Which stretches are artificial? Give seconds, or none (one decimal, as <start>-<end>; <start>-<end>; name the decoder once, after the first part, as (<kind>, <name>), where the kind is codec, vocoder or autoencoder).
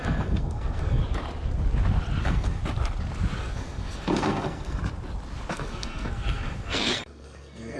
0.0-1.0 (codec, SNAC); 2.2-2.6; 3.4-4.8; 5.5-7.8